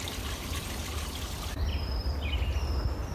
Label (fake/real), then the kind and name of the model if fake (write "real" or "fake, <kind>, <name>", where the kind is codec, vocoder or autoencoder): real